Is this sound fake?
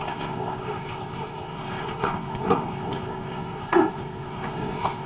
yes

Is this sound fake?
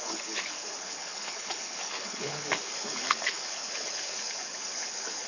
yes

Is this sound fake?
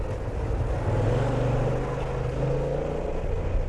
no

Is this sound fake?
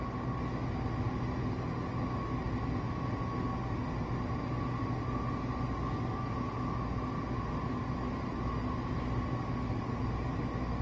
no